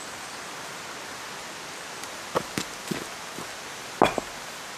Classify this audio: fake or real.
real